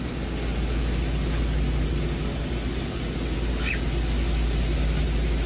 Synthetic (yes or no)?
no